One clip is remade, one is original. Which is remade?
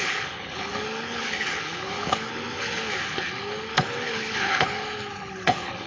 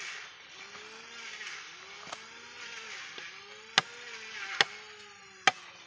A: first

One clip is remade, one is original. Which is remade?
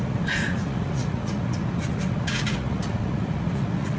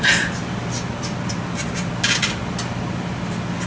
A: first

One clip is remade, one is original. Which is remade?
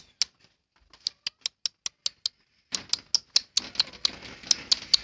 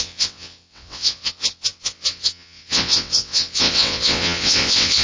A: second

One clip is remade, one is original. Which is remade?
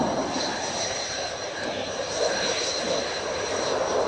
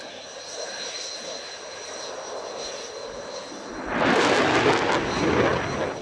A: first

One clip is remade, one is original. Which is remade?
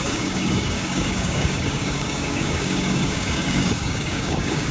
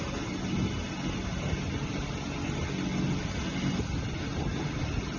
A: first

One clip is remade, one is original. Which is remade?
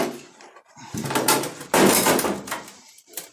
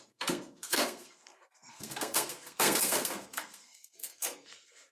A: second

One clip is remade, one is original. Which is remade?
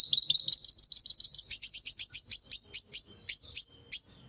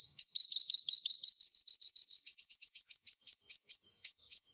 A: second